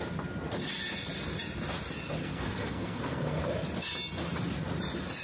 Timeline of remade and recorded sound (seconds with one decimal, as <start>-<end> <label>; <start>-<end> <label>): 0.0-2.2 recorded; 2.2-3.4 remade; 3.4-5.2 recorded